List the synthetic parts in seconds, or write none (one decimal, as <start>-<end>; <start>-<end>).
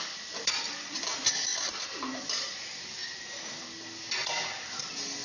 none